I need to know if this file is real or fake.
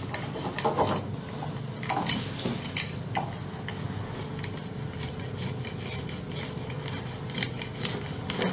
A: real